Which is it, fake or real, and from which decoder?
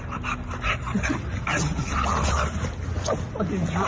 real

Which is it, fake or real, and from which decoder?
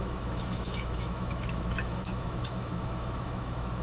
fake, autoencoder, DAC-VAE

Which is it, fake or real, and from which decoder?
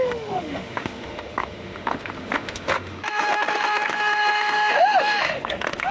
fake, autoencoder, DAC-VAE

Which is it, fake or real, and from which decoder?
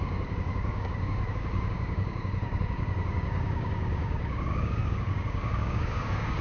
fake, codec, DAC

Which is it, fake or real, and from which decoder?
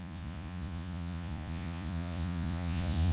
fake, vocoder, Vocos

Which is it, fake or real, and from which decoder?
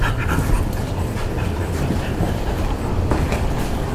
real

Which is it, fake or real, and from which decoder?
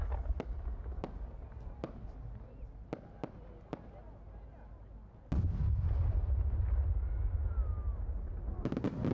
real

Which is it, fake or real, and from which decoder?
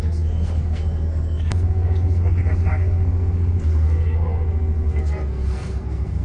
fake, codec, SNAC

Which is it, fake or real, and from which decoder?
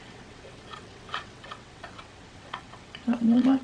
fake, vocoder, WaveNeXt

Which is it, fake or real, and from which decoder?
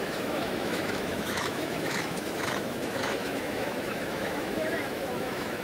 fake, autoencoder, DAC-VAE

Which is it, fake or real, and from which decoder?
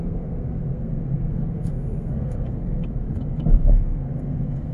fake, codec, SNAC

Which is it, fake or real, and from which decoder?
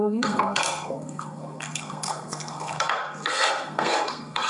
fake, codec, SNAC